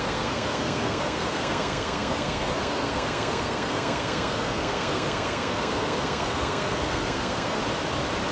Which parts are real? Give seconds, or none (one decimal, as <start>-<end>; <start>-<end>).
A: 7.6-8.3